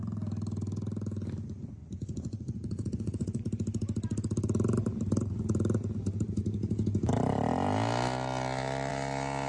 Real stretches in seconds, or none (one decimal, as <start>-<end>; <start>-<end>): 0.0-1.8; 3.4-9.5